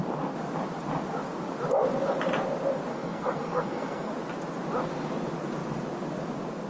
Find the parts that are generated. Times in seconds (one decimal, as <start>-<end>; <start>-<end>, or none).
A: 2.9-4.1

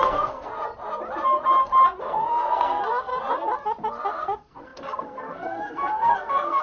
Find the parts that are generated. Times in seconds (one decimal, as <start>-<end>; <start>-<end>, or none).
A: 0.0-0.5; 2.0-3.1; 4.1-6.6

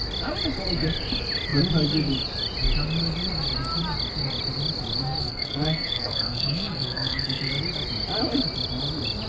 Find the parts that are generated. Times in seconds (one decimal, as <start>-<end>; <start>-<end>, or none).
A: 5.2-7.5

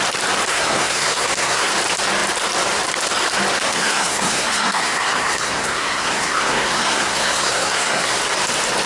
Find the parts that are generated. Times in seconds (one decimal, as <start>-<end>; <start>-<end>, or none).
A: 0.5-1.7; 3.7-8.2

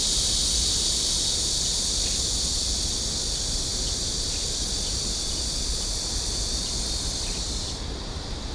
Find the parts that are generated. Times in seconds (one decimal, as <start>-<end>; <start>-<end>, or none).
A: none

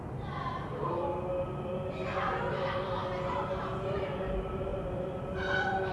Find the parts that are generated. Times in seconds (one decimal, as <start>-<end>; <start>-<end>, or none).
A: none